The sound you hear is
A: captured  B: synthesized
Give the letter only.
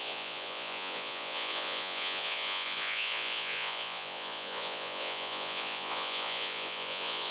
B